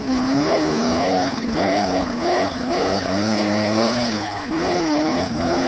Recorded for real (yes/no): no